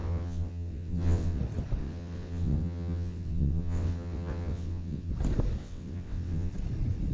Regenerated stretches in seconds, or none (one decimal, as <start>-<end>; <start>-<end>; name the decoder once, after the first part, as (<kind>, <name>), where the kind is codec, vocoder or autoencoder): 0.0-1.4 (vocoder, WaveNeXt); 1.8-5.1; 5.6-6.5